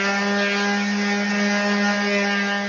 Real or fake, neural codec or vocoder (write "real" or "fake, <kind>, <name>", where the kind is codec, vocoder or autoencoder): real